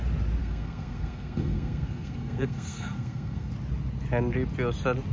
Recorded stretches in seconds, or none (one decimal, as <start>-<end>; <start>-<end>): 0.0-0.4; 3.5-5.1